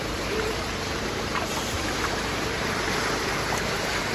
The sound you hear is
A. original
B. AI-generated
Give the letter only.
B